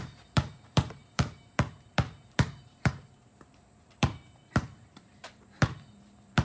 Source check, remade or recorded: remade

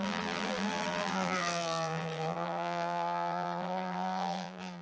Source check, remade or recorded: remade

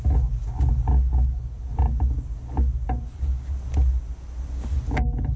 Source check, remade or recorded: recorded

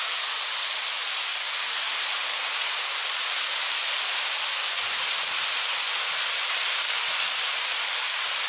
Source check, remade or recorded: recorded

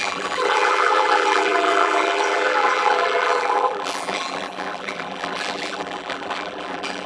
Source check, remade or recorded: remade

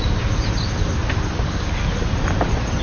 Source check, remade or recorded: recorded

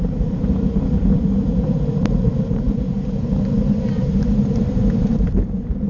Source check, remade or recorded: remade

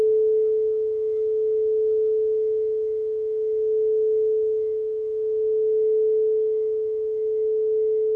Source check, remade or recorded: recorded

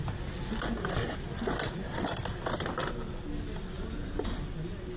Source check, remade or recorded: recorded